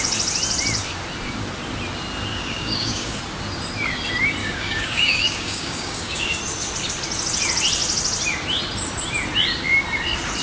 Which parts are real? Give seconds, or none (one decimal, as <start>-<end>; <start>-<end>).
0.0-2.3; 3.2-4.4; 6.4-10.4